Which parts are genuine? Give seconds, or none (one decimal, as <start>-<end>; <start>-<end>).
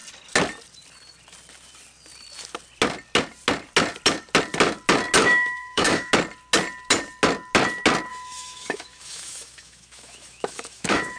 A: 0.0-5.2; 6.1-8.1